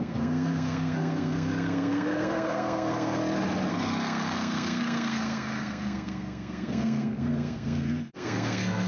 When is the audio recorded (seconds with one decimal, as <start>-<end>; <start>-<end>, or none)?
3.2-3.7